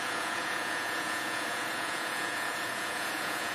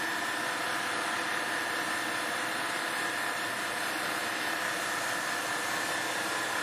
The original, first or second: second